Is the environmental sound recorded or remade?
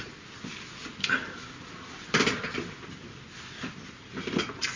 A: recorded